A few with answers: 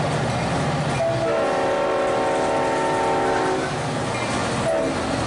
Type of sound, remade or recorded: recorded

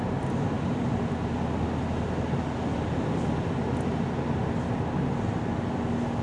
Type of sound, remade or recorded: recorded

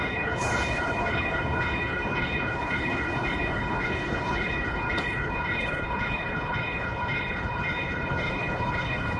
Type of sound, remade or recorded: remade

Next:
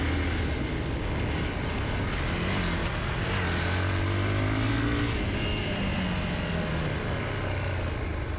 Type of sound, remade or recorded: recorded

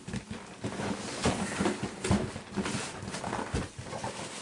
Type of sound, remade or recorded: recorded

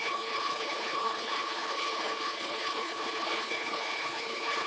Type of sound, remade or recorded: remade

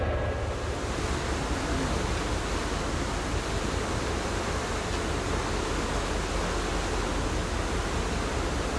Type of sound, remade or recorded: recorded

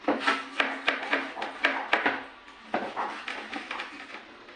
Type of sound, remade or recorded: recorded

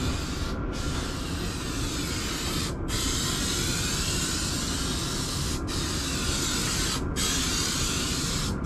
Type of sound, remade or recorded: recorded